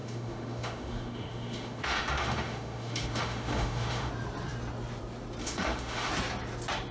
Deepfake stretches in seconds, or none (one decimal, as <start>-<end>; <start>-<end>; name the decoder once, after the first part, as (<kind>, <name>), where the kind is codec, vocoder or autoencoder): 0.0-4.1 (autoencoder, DAC-VAE); 5.4-6.1